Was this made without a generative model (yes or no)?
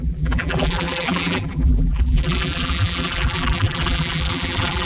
no